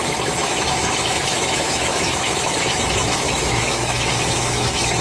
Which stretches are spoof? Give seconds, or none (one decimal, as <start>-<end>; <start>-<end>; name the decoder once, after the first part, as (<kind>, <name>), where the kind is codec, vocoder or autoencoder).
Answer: 0.0-5.0 (autoencoder, DAC-VAE)